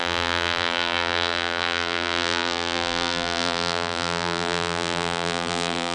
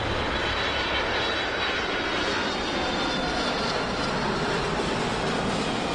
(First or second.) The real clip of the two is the second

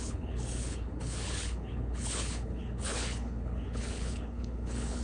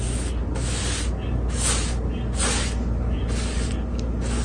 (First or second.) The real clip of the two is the second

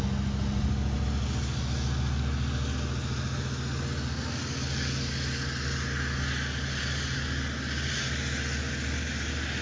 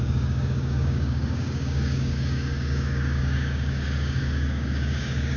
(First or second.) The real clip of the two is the first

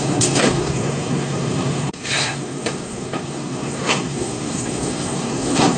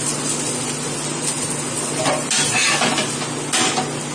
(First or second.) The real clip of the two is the second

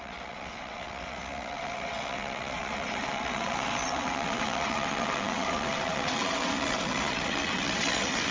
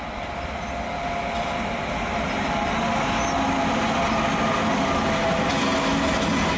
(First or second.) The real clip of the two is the second